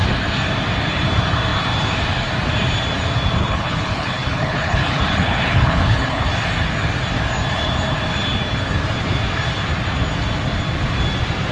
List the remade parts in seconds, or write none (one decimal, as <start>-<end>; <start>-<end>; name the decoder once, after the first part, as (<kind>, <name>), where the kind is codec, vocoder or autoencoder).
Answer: 3.4-6.3 (codec, HILCodec)